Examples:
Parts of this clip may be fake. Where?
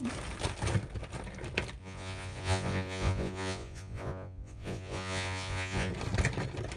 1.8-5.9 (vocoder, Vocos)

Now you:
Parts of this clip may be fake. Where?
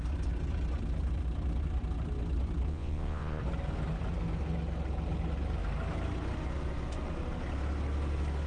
2.7-3.4 (vocoder, Vocos)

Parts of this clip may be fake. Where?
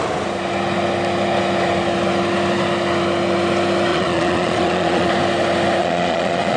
3.9-5.1 (vocoder, Vocos); 5.8-6.6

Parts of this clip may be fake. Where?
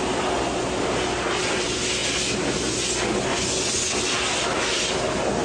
3.3-4.1 (vocoder, Vocos)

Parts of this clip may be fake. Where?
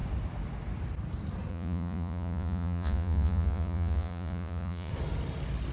1.5-4.9 (vocoder, Vocos)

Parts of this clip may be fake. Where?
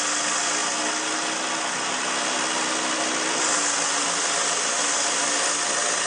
none